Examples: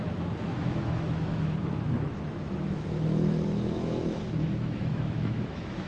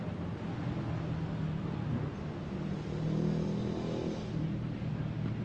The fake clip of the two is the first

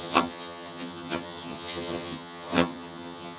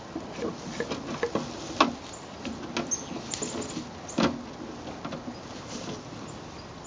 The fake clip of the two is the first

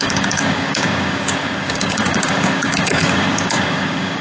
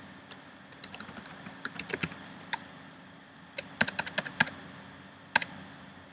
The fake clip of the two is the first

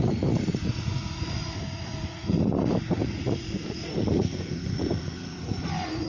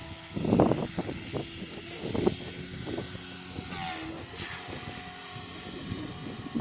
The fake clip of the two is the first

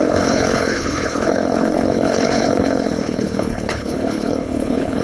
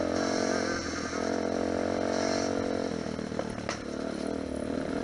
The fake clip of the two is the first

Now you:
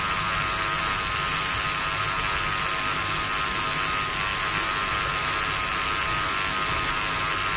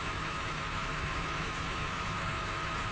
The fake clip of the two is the second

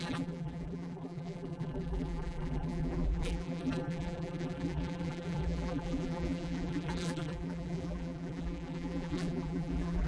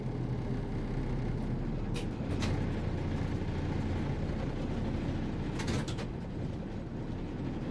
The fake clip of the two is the first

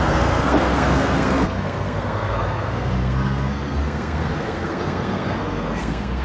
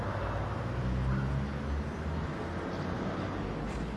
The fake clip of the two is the first